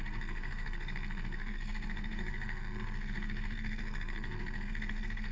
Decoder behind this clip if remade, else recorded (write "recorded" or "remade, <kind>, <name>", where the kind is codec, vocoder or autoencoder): remade, codec, SNAC